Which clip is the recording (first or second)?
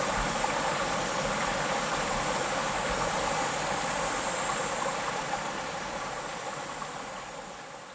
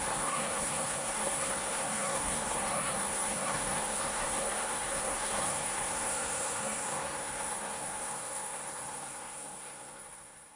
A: first